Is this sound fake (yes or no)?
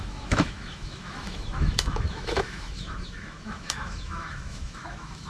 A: yes